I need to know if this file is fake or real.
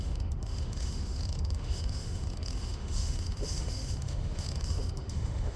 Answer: fake